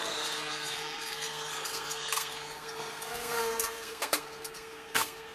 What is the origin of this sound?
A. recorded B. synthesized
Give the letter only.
B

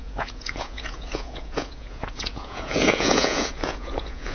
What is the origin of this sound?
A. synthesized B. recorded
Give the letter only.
A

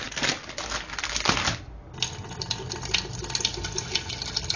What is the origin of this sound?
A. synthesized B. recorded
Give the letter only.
B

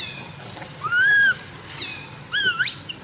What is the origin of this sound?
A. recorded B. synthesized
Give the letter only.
A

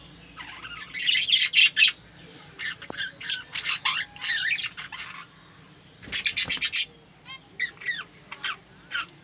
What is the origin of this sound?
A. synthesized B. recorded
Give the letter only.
B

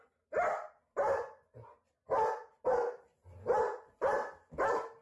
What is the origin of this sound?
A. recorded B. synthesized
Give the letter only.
A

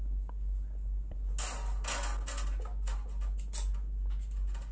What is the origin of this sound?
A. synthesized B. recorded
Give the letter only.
B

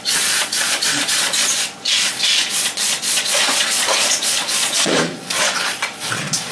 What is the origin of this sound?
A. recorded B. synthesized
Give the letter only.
B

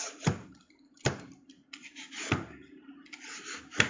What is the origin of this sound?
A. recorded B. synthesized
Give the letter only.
A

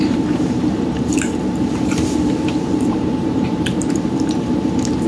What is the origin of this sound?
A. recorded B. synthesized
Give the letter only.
B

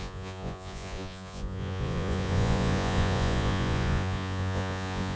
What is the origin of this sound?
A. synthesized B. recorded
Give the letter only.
A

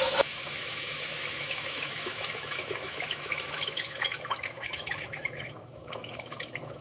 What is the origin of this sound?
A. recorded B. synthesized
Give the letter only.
B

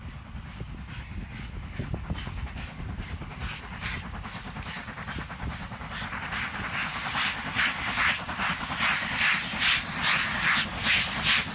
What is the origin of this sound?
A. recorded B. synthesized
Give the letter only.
A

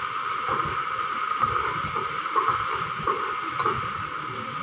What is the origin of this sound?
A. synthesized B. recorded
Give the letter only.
B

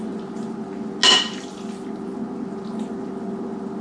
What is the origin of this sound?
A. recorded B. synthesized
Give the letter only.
A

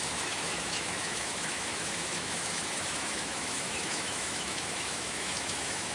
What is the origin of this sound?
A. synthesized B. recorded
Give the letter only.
A